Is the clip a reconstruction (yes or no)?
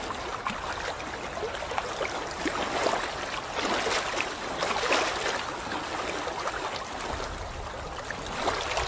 no